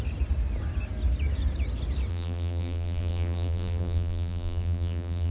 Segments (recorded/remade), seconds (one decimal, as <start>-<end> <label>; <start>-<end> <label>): 0.0-2.1 recorded; 2.1-5.3 remade